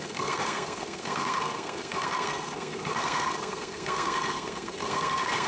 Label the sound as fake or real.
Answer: fake